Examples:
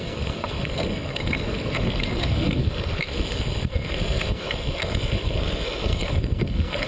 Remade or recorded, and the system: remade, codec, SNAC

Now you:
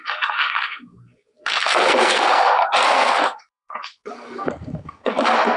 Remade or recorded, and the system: remade, codec, SNAC